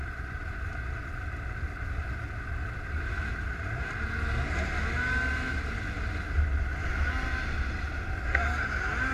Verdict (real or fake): real